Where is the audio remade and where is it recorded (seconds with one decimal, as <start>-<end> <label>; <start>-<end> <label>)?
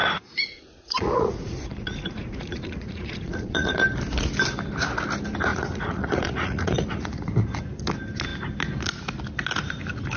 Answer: 0.0-3.8 remade; 3.8-5.5 recorded; 5.5-7.3 remade; 7.3-10.2 recorded